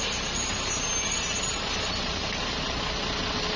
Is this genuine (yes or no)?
yes